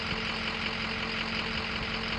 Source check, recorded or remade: recorded